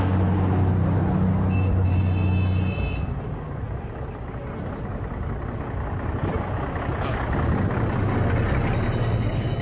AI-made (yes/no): no